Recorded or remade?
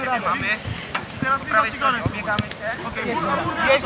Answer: recorded